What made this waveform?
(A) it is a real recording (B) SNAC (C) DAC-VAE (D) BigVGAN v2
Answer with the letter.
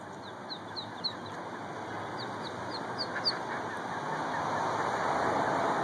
A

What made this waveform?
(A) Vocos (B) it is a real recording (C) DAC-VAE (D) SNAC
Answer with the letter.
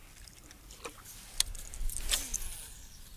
B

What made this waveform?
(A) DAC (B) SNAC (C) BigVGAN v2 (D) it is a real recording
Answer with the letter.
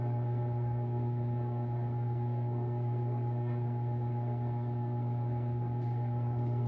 B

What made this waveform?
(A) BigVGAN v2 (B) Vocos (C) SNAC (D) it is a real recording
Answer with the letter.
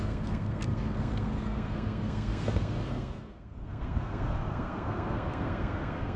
C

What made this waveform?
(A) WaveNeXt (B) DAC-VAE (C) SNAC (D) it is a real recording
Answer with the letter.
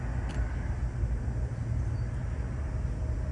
D